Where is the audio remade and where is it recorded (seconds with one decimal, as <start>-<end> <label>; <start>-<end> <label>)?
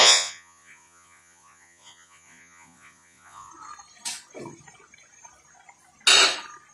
0.0-3.5 remade; 3.5-6.7 recorded